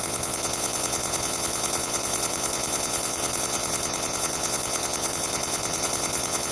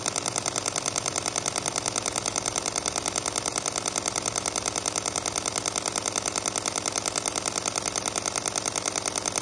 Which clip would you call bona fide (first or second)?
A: second